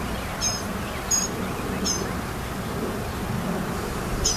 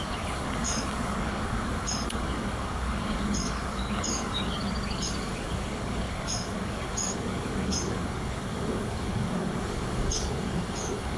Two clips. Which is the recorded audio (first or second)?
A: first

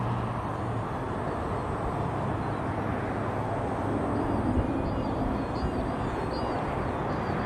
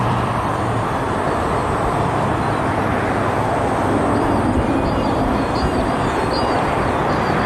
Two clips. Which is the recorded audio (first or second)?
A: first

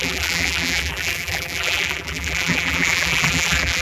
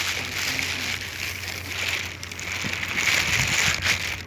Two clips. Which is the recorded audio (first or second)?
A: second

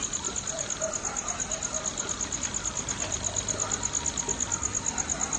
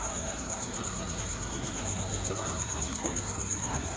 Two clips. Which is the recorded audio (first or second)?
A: first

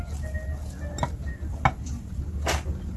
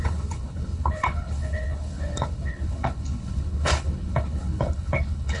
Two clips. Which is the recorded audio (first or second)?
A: first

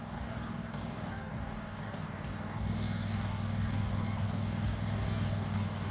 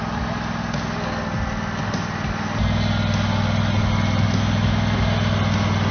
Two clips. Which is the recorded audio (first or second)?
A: second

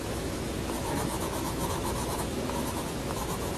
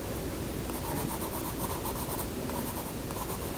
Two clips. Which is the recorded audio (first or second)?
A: second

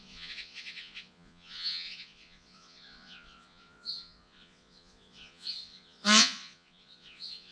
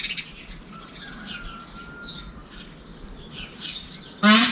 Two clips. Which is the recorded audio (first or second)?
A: second